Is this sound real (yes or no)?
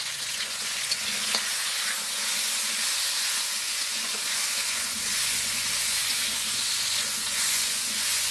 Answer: no